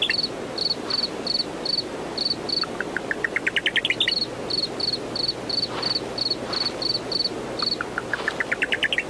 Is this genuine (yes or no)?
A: yes